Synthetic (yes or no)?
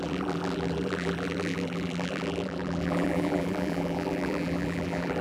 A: yes